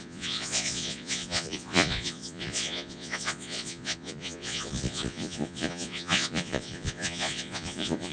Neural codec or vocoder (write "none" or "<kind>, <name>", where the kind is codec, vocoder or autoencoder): vocoder, Vocos